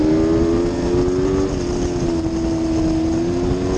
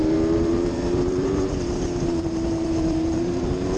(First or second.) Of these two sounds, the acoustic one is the first